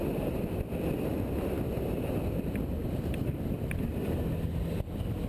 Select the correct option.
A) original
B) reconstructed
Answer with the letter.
A